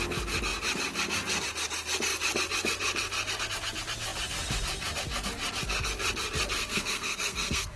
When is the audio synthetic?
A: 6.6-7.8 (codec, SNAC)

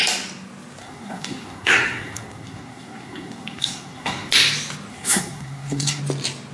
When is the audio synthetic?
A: 0.8-4.3 (codec, SNAC); 4.9-6.0

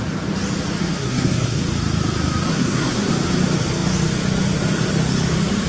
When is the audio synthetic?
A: 0.8-1.6 (codec, SNAC); 2.5-3.1

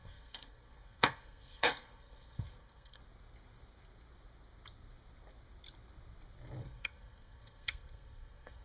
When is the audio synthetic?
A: 0.0-3.0 (codec, SNAC); 6.6-8.6

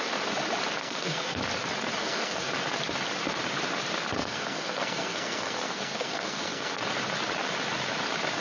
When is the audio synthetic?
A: 0.8-1.4 (codec, SNAC); 2.0-2.5; 4.2-6.8